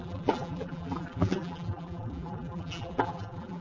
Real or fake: fake